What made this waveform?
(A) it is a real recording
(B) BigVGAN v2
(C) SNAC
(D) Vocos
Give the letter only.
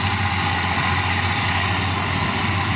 A